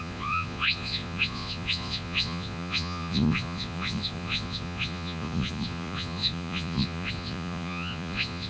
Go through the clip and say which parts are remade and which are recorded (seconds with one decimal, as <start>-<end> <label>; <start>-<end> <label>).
0.0-8.5 remade